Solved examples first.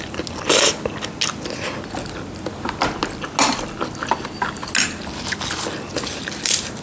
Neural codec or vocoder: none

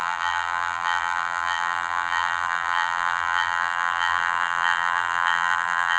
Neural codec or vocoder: vocoder, BigVGAN v2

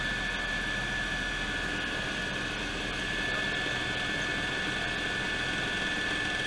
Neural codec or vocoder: none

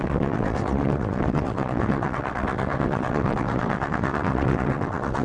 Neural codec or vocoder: vocoder, WaveNeXt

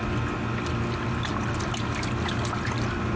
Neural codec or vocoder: none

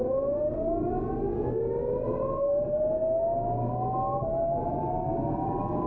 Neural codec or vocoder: none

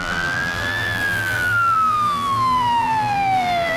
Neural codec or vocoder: vocoder, BigVGAN v2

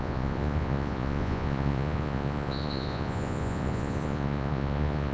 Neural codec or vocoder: vocoder, Vocos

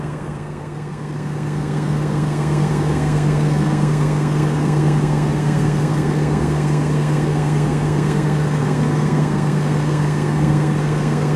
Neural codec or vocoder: codec, SNAC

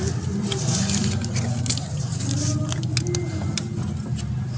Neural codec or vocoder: none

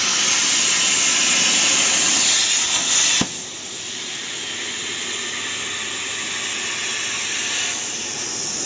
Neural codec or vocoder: none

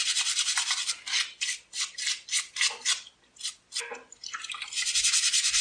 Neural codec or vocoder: none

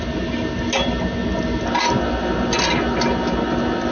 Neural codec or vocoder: none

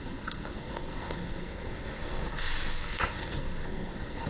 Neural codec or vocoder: codec, SNAC